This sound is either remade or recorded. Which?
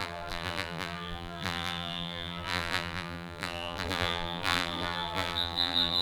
remade